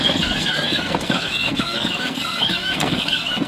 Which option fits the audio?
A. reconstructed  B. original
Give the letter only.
A